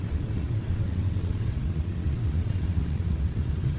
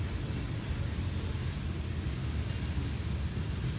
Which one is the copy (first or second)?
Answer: first